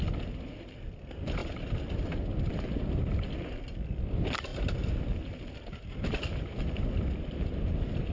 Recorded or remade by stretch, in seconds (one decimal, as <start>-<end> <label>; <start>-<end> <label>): 0.0-8.1 recorded